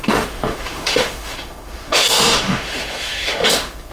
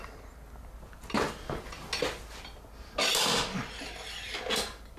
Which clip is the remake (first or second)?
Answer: first